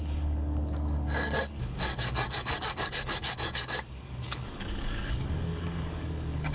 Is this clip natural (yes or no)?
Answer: no